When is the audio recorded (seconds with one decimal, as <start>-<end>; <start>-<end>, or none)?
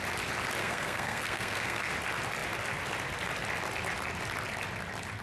0.0-0.6; 1.9-5.2